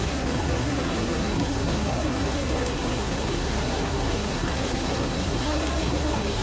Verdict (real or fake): fake